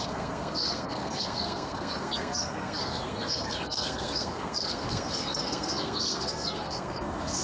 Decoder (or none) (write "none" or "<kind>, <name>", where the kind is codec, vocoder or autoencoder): codec, SNAC